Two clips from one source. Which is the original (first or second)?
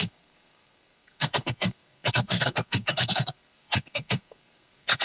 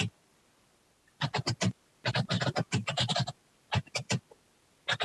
second